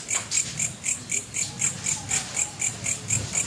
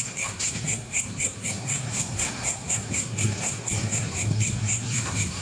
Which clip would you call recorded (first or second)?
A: first